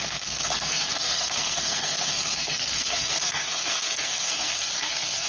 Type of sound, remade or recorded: remade